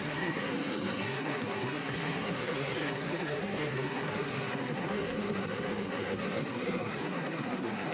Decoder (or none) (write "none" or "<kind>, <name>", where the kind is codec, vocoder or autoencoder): codec, SNAC